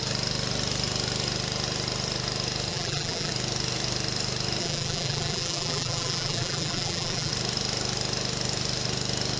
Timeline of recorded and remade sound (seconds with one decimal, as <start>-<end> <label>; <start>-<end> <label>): 0.0-2.7 recorded; 2.7-3.3 remade; 3.3-4.6 recorded; 4.6-7.3 remade; 7.3-9.4 recorded